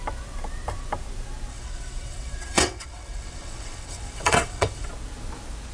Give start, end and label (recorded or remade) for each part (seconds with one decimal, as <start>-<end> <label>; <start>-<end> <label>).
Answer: 0.0-1.5 recorded; 1.5-4.9 remade; 4.9-5.7 recorded